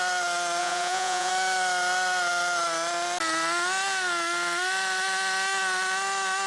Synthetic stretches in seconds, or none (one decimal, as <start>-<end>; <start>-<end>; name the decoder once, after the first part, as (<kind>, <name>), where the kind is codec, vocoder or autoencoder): 0.6-1.3 (vocoder, Vocos)